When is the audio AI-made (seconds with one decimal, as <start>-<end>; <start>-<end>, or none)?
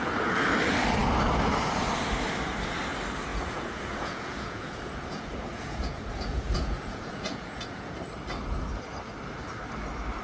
3.3-7.9